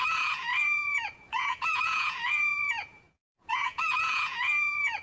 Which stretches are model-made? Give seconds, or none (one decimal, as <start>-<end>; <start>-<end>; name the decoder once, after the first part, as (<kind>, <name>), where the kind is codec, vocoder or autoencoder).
0.0-5.0 (vocoder, Vocos)